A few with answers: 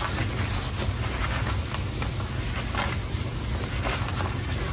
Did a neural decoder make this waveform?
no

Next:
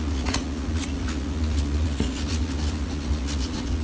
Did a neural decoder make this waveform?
yes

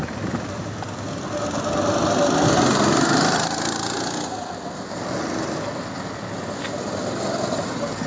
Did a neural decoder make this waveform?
no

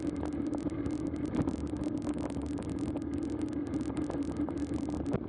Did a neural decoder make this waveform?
no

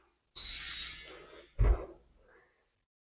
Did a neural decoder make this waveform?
no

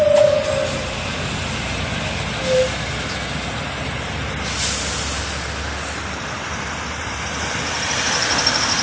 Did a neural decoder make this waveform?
no